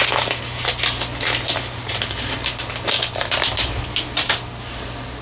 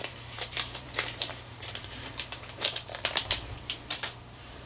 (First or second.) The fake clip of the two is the second